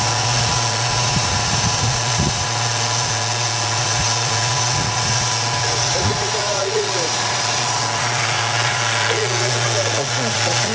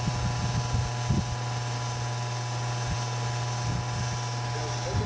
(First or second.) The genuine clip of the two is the second